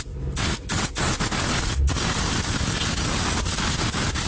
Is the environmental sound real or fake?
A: real